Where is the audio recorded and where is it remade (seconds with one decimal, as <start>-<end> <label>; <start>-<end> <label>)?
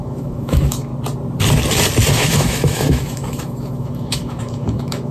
0.0-0.9 remade; 0.9-2.1 recorded; 2.1-5.1 remade